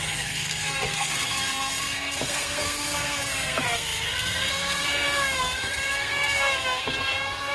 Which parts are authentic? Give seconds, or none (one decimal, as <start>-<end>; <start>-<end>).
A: none